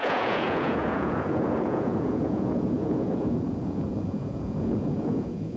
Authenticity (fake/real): fake